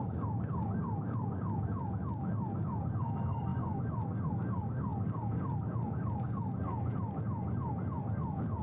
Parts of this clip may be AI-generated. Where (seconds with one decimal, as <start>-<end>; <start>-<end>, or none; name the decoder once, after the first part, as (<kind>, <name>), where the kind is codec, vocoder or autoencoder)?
0.0-6.7 (codec, DAC); 8.0-8.6